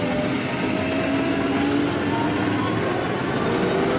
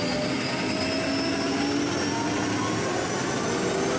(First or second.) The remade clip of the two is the second